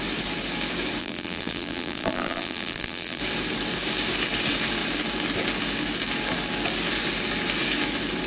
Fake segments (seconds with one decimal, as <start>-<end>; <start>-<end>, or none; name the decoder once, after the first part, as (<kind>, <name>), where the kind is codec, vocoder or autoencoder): 1.0-3.2 (vocoder, BigVGAN v2)